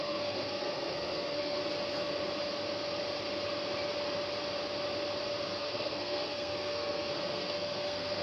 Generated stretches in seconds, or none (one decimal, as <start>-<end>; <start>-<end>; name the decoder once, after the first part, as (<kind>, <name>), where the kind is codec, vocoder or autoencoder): 0.0-1.6 (codec, SNAC); 5.6-8.2

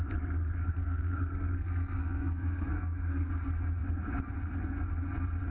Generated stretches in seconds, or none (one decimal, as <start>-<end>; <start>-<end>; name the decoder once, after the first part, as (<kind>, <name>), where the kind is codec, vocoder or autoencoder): 0.6-3.3 (codec, SNAC)